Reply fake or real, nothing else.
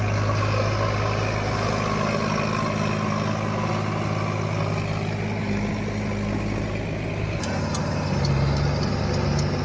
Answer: real